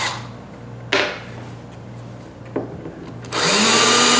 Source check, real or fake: real